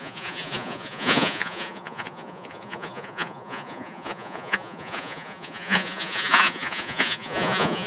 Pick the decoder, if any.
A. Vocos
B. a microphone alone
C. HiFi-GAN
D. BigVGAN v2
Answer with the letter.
A